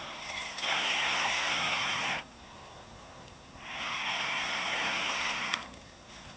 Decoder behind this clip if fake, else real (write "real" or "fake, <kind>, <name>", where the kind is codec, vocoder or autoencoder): fake, codec, SNAC